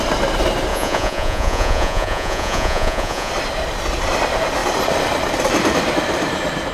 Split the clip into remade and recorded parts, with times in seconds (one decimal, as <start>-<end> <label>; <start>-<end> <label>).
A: 0.0-0.7 recorded; 0.7-3.3 remade; 3.3-6.7 recorded

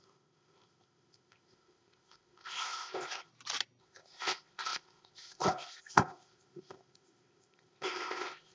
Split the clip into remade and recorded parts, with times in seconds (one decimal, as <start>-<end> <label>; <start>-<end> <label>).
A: 0.0-3.3 remade; 3.3-3.8 recorded; 3.8-8.5 remade

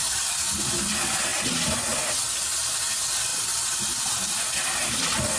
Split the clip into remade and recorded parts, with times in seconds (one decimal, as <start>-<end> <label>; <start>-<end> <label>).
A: 0.0-5.4 recorded

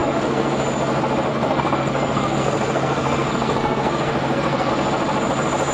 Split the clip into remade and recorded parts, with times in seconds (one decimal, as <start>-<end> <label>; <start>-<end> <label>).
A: 0.0-0.5 remade; 0.5-1.3 recorded; 1.3-4.7 remade; 4.7-5.7 recorded

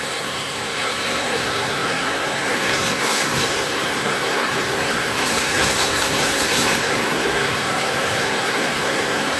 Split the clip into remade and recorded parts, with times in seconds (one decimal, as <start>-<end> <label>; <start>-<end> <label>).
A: 0.0-9.4 remade